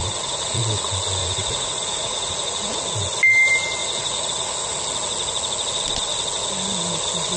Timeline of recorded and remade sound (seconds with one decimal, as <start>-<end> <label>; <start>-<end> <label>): 0.0-0.6 remade; 0.6-1.2 recorded; 1.2-2.8 remade; 2.8-3.8 recorded; 3.8-4.8 remade; 4.8-7.4 recorded